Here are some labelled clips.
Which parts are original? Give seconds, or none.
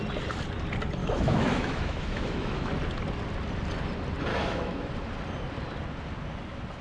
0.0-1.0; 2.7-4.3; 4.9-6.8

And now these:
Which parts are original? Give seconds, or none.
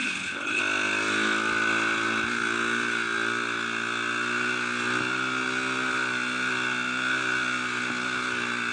0.6-8.7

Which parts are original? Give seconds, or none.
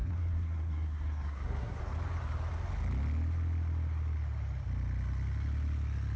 1.8-6.2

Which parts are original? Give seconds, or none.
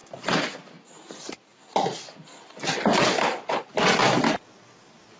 0.0-5.2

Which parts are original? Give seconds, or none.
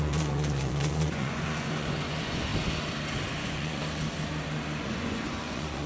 2.5-3.3; 3.8-4.8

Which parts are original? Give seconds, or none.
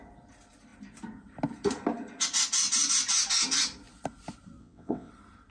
0.0-4.6; 5.1-5.5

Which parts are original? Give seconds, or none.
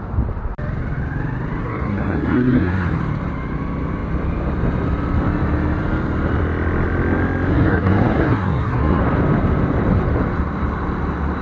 0.0-1.6; 3.0-7.5; 9.0-11.4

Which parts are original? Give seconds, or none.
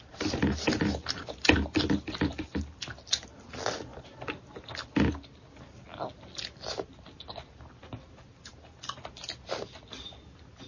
0.0-10.7